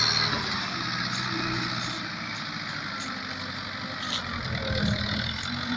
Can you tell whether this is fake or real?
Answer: real